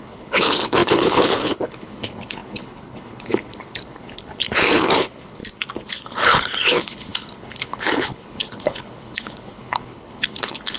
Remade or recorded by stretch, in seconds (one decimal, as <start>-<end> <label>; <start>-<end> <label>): 0.0-5.4 remade; 5.4-5.9 recorded; 5.9-10.8 remade